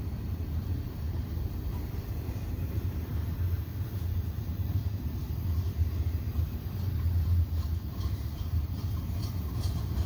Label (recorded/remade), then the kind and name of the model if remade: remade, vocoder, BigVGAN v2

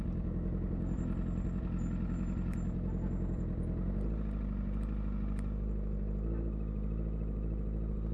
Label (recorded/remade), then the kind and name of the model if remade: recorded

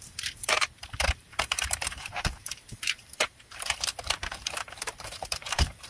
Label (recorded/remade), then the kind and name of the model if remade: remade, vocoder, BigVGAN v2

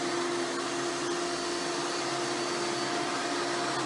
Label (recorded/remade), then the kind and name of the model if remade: recorded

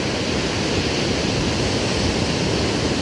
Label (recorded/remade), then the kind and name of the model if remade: recorded